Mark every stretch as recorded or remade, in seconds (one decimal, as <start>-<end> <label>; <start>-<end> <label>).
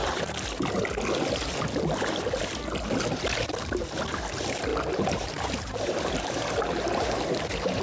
0.0-4.7 recorded; 4.7-7.8 remade